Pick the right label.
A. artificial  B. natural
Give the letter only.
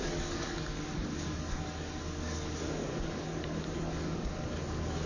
A